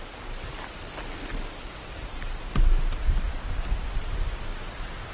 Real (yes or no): yes